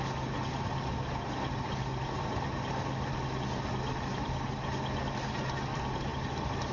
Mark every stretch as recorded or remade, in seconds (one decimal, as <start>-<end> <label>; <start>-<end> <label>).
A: 0.0-6.7 recorded